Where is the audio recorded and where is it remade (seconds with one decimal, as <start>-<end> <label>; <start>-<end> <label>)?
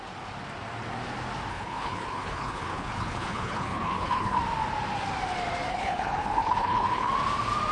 0.0-1.5 recorded; 1.5-4.4 remade; 4.4-5.7 recorded; 5.7-7.1 remade; 7.1-7.7 recorded